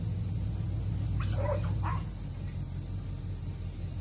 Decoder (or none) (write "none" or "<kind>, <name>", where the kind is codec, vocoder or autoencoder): none